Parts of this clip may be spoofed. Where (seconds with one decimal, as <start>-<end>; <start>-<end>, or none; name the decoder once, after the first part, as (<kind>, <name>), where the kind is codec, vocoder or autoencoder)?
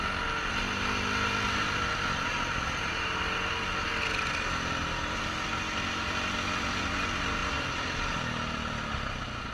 none